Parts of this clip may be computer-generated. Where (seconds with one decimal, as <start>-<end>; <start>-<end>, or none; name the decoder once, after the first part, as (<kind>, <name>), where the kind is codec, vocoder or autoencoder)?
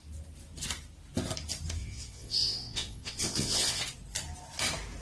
1.8-3.8 (vocoder, WaveNeXt)